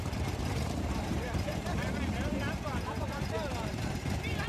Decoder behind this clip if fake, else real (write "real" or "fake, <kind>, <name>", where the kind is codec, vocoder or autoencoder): fake, vocoder, BigVGAN v2